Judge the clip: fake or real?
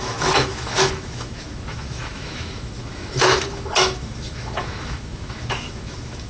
fake